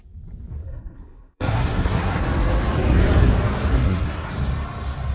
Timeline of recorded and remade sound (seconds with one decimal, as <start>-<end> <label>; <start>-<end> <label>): 0.0-0.5 recorded; 0.5-2.2 remade; 2.2-3.7 recorded; 3.7-4.3 remade; 4.3-5.1 recorded